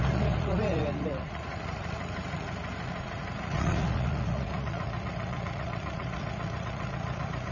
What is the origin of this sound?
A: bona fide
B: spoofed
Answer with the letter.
B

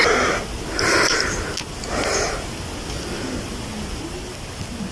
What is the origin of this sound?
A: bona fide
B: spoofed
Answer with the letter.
A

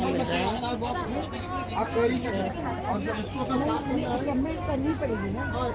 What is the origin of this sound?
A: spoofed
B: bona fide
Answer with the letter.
B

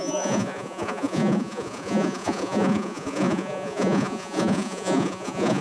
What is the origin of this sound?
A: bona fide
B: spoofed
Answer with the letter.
B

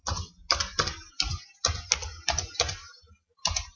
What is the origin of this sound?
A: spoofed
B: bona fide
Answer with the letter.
B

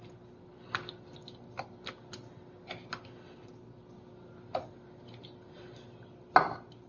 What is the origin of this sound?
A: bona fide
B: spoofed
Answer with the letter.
A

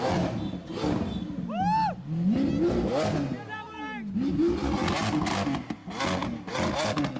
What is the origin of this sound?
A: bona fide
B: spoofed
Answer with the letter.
A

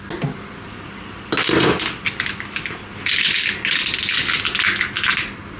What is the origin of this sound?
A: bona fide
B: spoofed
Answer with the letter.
A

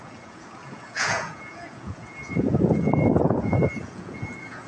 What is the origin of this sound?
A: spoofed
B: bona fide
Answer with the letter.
A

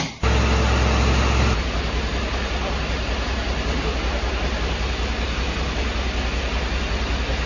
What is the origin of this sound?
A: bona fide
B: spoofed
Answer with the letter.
A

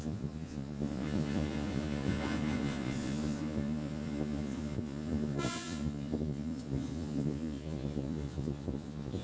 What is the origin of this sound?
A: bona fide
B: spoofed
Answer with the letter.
B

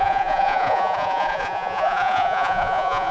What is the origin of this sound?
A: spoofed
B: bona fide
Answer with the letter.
A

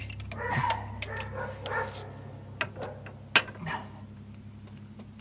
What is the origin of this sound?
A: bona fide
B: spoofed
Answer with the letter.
A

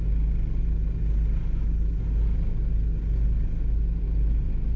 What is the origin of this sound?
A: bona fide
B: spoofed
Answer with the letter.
A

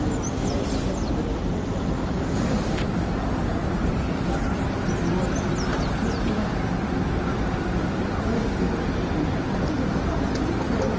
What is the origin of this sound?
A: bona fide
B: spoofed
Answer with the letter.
A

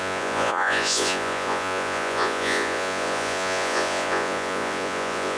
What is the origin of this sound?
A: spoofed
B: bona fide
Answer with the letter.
A